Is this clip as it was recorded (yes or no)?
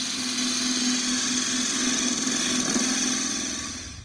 yes